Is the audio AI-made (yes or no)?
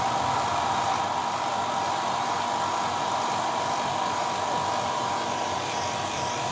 no